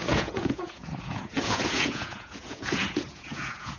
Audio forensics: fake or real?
fake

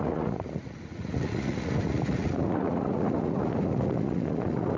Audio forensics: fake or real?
fake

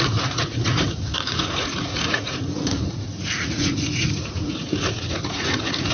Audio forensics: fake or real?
fake